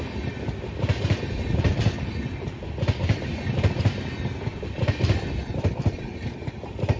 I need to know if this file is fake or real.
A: real